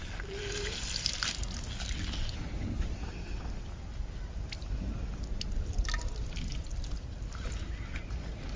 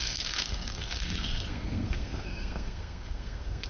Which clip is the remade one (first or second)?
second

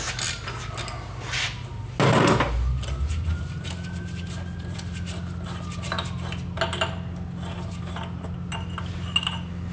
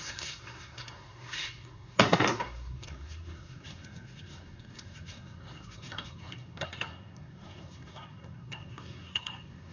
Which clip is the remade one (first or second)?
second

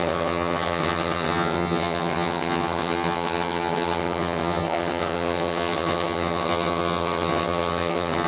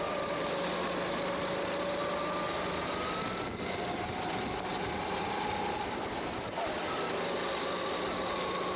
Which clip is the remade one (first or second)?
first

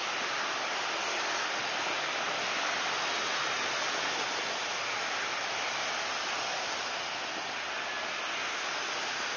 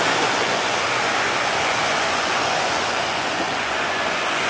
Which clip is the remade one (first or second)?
second